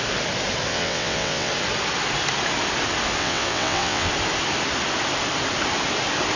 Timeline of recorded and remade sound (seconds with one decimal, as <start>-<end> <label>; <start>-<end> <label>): 0.0-0.7 recorded; 0.7-1.5 remade; 1.5-3.2 recorded; 3.2-4.1 remade; 4.1-6.4 recorded